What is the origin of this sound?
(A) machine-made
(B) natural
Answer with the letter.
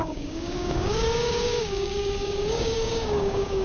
A